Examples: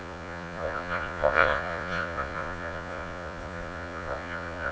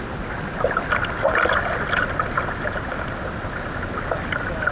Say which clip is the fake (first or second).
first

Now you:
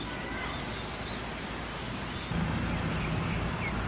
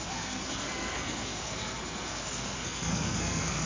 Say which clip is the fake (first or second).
second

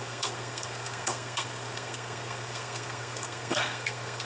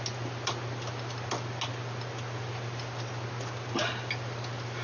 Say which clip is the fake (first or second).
first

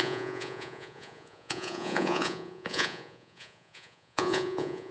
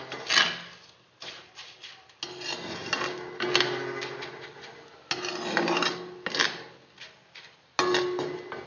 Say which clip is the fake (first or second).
first